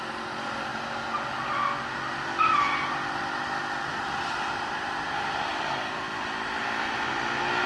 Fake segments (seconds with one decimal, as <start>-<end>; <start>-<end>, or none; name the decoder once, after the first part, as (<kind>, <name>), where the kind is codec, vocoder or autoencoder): 3.8-7.1 (vocoder, BigVGAN v2)